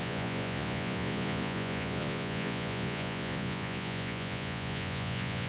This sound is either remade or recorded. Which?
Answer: remade